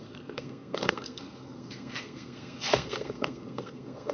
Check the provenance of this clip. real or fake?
fake